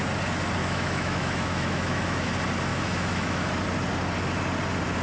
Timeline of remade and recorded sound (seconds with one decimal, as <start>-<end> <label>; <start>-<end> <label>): 0.0-0.6 recorded; 0.6-2.3 remade; 2.3-2.7 recorded; 2.7-3.5 remade; 3.5-5.0 recorded